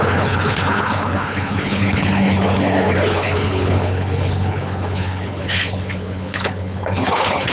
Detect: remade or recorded remade